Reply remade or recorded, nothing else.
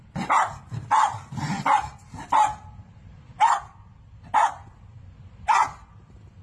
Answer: recorded